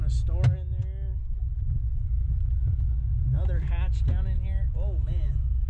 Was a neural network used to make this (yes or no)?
no